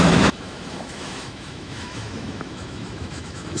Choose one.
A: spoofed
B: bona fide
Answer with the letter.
A